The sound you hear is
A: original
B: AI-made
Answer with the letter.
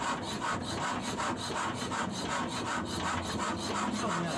A